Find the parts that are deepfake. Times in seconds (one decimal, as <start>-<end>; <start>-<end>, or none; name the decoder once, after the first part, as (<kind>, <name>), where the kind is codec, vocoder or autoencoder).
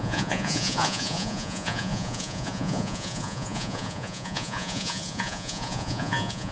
0.0-6.5 (vocoder, Vocos)